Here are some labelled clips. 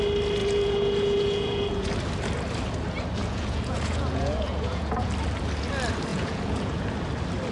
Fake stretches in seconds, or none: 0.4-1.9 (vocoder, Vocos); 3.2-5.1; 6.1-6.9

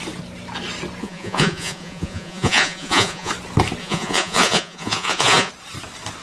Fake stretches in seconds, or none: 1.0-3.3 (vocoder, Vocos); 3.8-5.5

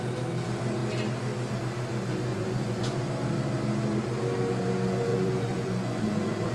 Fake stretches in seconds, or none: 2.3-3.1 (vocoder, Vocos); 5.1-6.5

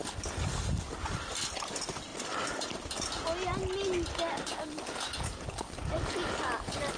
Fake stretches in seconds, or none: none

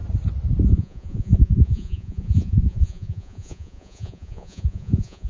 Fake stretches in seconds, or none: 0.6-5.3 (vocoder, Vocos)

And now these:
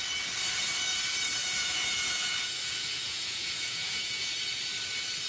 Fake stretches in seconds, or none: 1.4-4.3 (vocoder, Vocos)

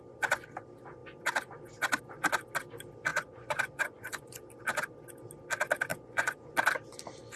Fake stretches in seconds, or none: 3.1-4.5 (vocoder, Vocos); 5.9-6.5

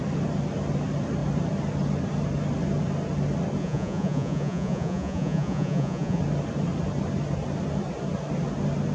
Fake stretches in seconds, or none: 3.6-6.2 (vocoder, Vocos)